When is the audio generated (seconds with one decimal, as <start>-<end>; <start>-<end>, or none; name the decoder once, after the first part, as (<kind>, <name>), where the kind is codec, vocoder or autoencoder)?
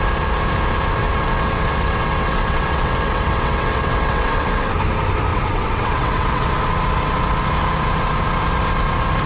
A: 1.0-4.7 (vocoder, WaveNeXt); 5.3-6.5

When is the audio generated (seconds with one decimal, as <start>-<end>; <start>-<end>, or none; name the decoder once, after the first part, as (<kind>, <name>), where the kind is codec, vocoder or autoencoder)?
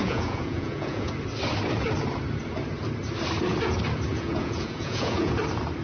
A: 0.0-1.1 (vocoder, Vocos); 4.1-5.3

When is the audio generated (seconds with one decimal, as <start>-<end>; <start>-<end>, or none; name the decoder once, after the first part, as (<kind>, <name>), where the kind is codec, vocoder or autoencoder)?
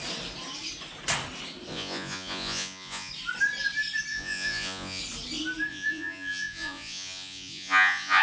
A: 1.7-3.1 (vocoder, Vocos); 4.1-5.0; 5.7-8.2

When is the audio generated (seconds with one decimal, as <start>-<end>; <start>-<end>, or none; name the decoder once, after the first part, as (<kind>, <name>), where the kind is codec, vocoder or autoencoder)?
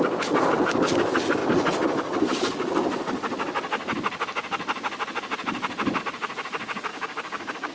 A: 6.9-7.7 (codec, DAC)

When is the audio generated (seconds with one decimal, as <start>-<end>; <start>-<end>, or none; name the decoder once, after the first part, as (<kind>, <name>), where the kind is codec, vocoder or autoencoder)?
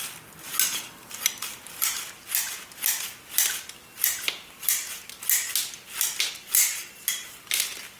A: none